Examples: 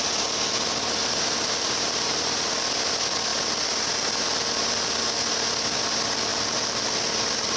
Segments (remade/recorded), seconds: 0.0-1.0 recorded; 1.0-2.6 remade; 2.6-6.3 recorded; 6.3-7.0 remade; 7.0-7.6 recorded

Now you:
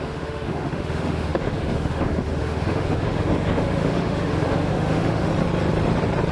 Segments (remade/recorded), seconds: 0.0-5.3 remade; 5.3-6.3 recorded